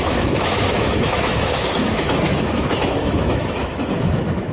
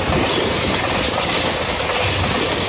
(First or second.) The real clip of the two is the second